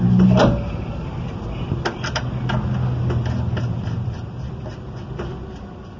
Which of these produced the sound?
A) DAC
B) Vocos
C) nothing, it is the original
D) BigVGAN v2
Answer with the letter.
C